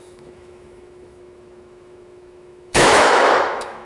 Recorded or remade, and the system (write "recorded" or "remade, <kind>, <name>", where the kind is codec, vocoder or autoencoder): remade, autoencoder, DAC-VAE